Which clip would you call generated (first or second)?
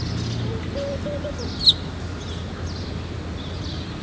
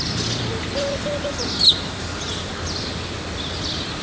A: second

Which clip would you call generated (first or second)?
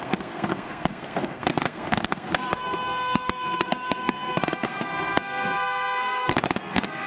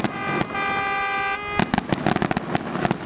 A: first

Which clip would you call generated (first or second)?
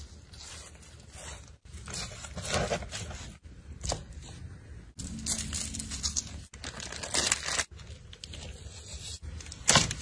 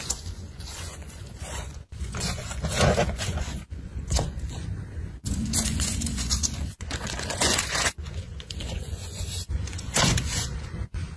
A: second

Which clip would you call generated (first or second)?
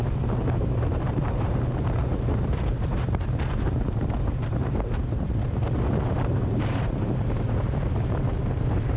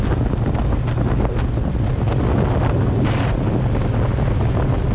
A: first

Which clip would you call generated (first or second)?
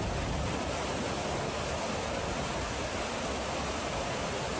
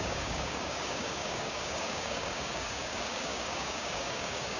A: second